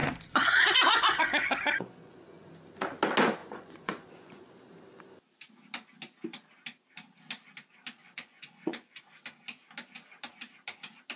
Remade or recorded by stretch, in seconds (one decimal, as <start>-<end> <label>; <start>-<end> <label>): 0.0-2.5 remade; 2.5-3.4 recorded; 3.4-4.5 remade; 4.5-8.0 recorded; 8.0-9.0 remade; 9.0-11.2 recorded